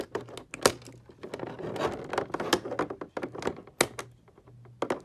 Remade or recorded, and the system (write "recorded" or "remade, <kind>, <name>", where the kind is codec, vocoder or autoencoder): recorded